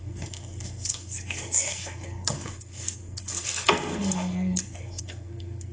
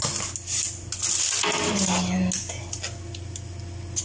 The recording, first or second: second